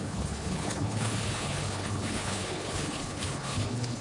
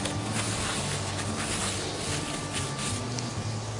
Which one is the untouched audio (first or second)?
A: second